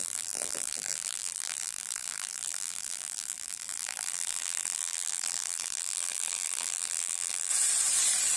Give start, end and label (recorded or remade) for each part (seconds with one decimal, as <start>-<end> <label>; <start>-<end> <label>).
0.0-7.5 remade; 7.5-8.4 recorded